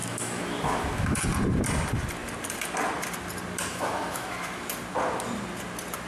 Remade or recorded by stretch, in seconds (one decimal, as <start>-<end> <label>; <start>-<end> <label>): 0.0-1.2 remade; 1.2-3.7 recorded; 3.7-4.7 remade; 4.7-6.1 recorded